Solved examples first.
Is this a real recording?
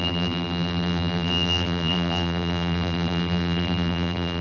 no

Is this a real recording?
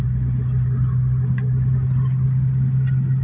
yes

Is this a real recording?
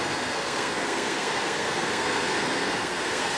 no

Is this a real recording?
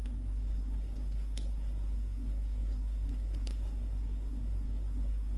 no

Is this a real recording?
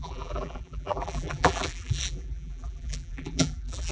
no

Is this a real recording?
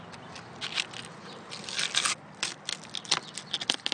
yes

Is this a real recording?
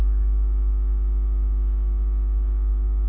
no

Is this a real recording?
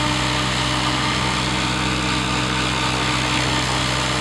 yes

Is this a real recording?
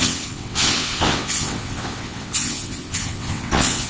no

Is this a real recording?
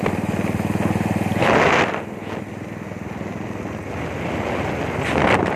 yes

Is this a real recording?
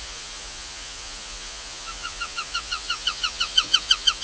no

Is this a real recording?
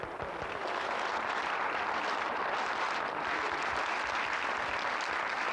yes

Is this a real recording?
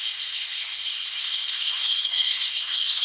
no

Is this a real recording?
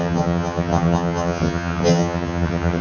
no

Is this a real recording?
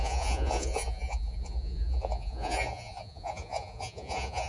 no